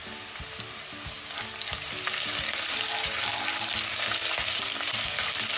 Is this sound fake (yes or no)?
no